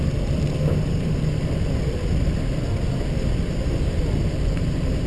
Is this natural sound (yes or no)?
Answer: yes